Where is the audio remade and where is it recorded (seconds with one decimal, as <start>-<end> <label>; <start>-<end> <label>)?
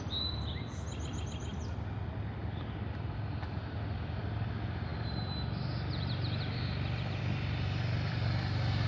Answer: 0.0-8.9 recorded